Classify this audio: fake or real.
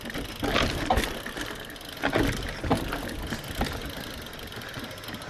real